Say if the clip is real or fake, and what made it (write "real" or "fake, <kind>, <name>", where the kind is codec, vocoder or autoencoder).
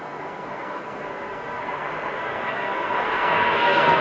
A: fake, codec, SNAC